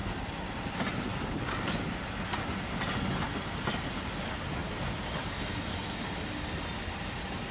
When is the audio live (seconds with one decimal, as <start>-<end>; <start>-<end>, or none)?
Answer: 0.0-1.1; 1.9-7.5